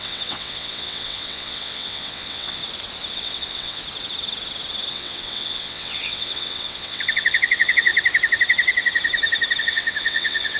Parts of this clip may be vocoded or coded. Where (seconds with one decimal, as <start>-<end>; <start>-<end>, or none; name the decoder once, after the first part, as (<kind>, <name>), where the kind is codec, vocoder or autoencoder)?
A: 0.0-2.6 (vocoder, WaveNeXt); 3.1-3.8; 4.9-7.9; 9.6-10.6

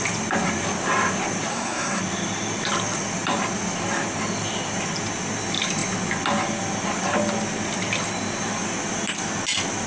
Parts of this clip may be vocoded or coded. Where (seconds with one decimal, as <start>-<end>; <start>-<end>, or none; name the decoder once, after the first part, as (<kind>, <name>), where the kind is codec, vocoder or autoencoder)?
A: 1.5-2.0 (codec, SNAC)

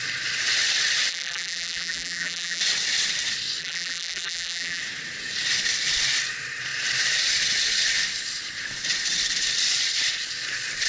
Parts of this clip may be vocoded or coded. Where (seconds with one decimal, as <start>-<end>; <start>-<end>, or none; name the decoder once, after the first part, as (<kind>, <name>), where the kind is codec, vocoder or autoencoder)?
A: 1.1-2.6 (vocoder, BigVGAN v2); 3.6-4.8

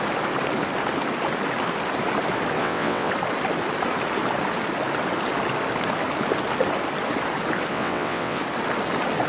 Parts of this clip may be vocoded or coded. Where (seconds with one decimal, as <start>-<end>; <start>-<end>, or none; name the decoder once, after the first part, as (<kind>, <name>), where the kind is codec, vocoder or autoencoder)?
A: 2.6-3.1 (vocoder, WaveNeXt); 7.7-8.4

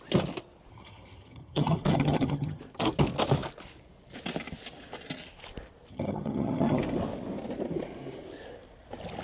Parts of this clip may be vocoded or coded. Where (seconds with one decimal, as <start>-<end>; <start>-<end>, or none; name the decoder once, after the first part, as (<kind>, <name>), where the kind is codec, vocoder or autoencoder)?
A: 0.7-2.6 (vocoder, HiFi-GAN); 5.9-6.8

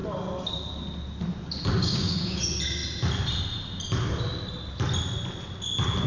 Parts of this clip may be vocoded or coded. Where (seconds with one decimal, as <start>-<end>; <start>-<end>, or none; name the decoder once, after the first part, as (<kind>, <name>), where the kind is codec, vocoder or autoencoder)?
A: 1.8-2.4 (codec, DAC)

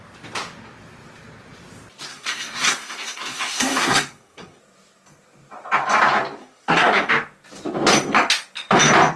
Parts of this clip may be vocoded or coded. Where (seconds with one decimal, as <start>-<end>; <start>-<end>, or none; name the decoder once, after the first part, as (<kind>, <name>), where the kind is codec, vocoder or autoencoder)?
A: 2.1-4.6 (codec, SNAC); 6.4-7.1